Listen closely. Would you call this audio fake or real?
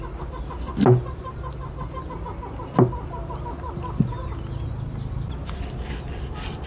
real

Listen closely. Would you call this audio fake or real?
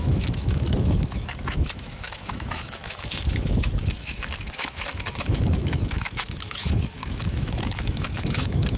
fake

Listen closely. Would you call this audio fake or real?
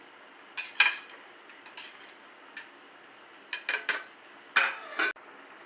real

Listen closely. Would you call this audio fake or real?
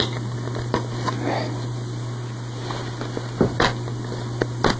real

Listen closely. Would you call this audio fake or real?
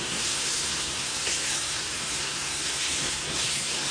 fake